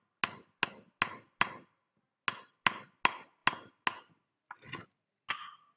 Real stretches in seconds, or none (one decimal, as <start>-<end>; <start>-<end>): 0.0-5.8